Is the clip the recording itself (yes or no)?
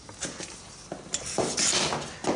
yes